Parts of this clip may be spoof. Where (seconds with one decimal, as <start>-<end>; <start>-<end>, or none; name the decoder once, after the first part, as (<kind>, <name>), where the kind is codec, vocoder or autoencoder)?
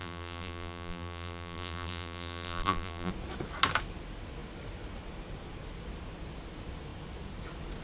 0.0-3.1 (vocoder, BigVGAN v2)